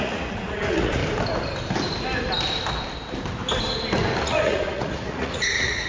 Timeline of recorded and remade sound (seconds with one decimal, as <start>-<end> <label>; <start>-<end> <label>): 0.0-1.0 remade; 1.0-4.2 recorded; 4.2-5.9 remade